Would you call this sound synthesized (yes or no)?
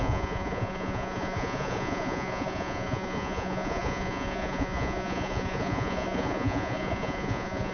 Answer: yes